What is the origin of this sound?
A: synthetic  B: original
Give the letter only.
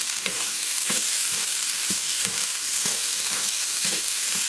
A